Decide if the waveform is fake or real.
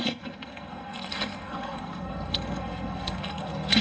fake